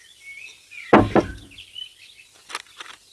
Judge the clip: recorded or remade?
recorded